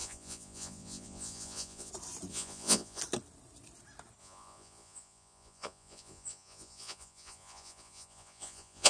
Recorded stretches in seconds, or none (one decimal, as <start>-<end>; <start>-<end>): 1.9-2.3; 3.0-4.2